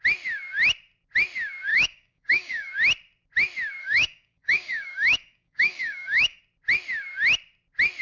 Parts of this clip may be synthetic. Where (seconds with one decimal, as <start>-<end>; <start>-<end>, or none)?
1.7-2.7; 3.8-6.4